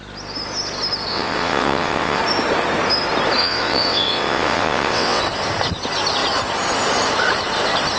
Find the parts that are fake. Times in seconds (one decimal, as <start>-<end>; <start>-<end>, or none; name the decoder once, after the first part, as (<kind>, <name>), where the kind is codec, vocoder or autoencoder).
1.1-2.2 (vocoder, WaveNeXt); 3.4-5.2